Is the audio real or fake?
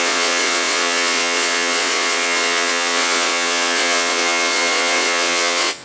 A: fake